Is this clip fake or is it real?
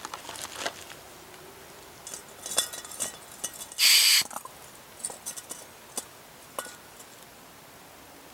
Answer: real